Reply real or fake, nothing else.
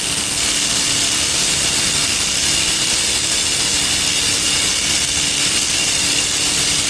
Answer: real